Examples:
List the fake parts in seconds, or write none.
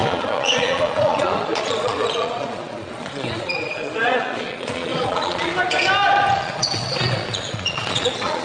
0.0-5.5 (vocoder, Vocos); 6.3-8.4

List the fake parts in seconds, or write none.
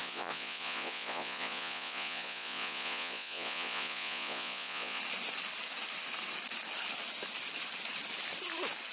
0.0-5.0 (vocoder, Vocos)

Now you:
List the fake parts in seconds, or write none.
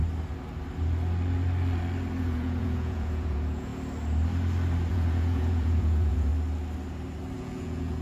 2.2-3.7 (vocoder, Vocos); 4.9-6.3; 7.4-8.0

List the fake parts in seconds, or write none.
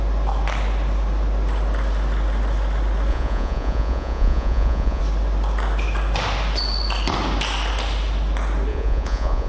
3.1-5.0 (vocoder, Vocos); 8.7-9.5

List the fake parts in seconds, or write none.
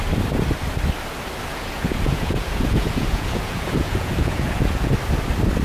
1.5-4.9 (vocoder, Vocos)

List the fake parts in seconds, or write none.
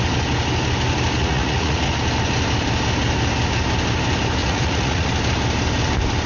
1.2-1.9 (vocoder, Vocos); 4.4-5.1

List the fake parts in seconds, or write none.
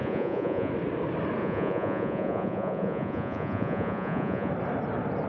0.0-0.7 (vocoder, Vocos); 1.4-4.5